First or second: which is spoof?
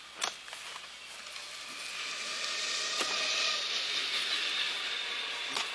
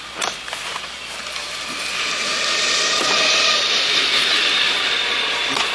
second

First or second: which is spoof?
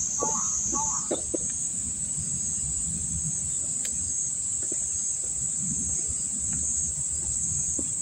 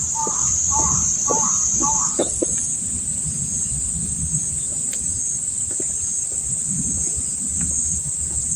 first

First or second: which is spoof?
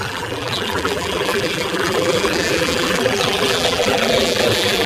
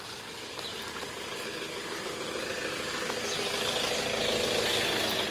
first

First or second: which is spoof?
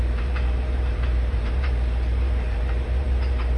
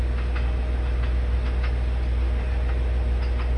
first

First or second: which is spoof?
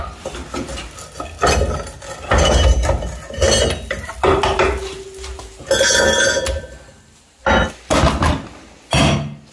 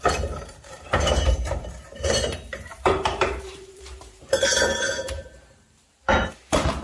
second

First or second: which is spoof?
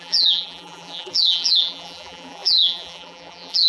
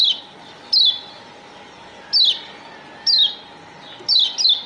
first